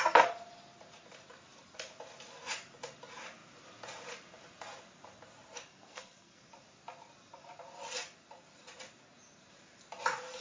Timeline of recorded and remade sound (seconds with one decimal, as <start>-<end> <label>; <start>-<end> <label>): 0.0-5.7 recorded; 5.7-6.5 remade; 6.5-10.4 recorded